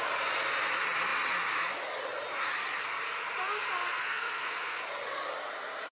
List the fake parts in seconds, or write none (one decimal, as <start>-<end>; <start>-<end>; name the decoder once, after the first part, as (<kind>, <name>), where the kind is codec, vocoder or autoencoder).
3.9-4.8 (codec, SNAC)